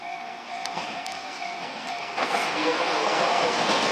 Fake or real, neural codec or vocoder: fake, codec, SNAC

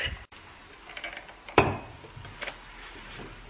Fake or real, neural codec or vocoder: fake, vocoder, BigVGAN v2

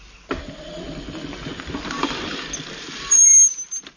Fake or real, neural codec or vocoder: real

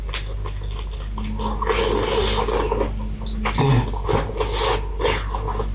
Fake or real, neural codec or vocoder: real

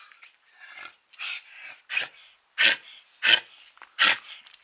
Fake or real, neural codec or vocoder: real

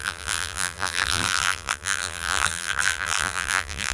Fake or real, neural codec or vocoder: fake, vocoder, BigVGAN v2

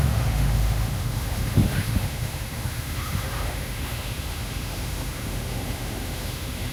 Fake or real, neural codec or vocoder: fake, autoencoder, DAC-VAE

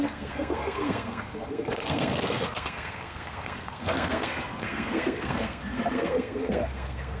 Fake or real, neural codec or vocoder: fake, codec, SNAC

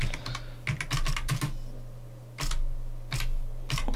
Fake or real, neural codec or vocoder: real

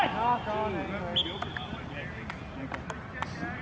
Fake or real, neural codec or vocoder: real